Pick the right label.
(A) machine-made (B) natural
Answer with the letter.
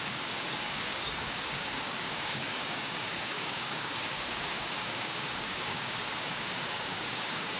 A